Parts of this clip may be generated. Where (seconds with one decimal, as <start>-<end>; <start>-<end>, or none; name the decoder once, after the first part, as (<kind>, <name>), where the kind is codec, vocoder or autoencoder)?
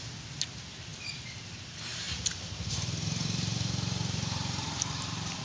0.9-1.5 (vocoder, BigVGAN v2); 1.9-5.4